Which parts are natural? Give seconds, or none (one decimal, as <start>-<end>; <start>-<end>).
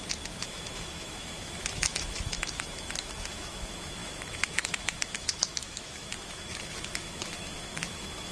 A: none